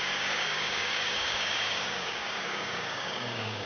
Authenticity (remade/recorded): remade